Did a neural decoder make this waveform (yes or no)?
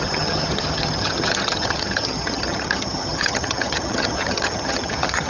yes